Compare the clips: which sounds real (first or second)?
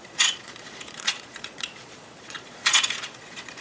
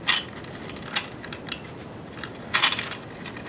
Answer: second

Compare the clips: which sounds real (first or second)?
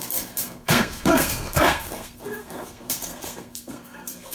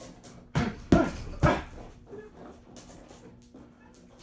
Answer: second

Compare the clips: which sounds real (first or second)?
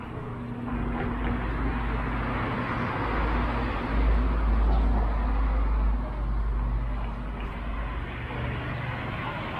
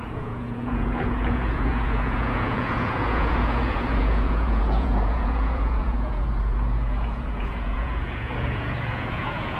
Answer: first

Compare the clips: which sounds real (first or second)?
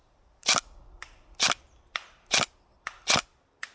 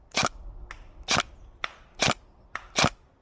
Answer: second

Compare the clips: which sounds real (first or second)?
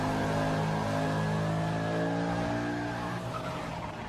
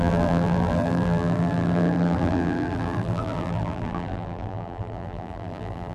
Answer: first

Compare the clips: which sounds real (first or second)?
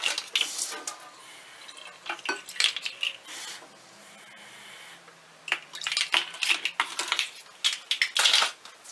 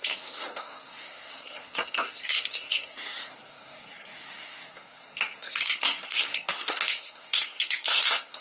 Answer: first